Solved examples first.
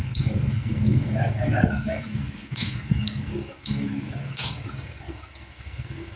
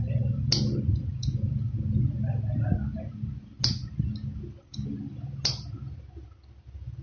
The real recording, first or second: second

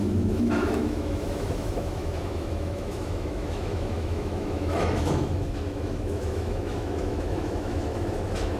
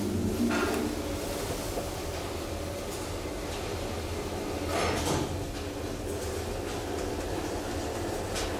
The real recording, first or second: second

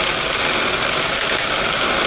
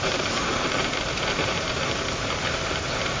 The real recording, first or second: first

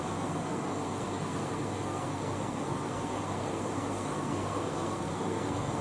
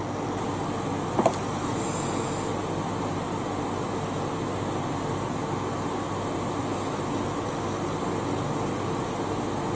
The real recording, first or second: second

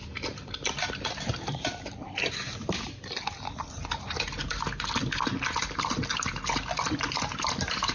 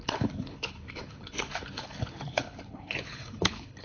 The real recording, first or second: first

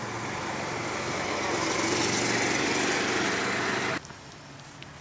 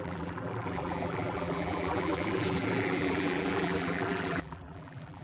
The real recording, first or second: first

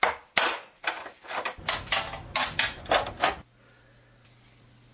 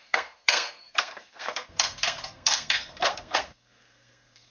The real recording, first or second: first